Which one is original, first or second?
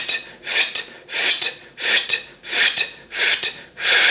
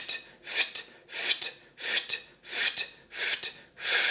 second